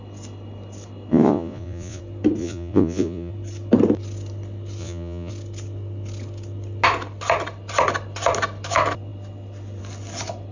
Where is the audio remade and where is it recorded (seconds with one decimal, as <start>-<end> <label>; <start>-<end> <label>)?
0.0-1.1 recorded; 1.1-2.0 remade; 2.0-2.4 recorded; 2.4-3.3 remade; 3.3-4.8 recorded; 4.8-5.3 remade; 5.3-10.5 recorded